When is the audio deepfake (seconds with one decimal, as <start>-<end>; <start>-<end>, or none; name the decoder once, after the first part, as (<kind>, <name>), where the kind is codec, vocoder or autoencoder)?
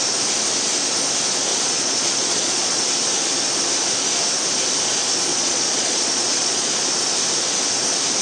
1.5-2.8 (vocoder, Vocos); 5.3-6.8